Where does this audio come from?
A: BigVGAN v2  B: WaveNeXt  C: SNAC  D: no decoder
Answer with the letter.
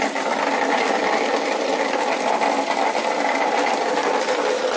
A